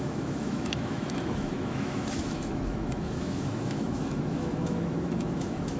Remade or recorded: remade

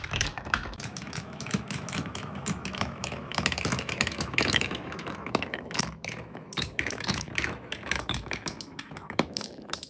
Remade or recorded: remade